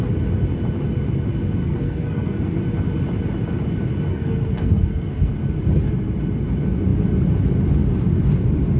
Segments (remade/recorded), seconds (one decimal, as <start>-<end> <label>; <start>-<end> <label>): 0.0-1.6 recorded; 1.6-2.6 remade; 2.6-4.1 recorded; 4.1-5.3 remade; 5.3-8.8 recorded